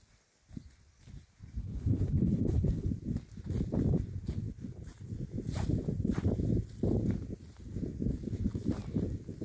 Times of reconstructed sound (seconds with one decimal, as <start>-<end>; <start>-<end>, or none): 1.6-2.9